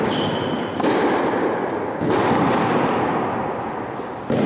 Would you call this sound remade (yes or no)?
no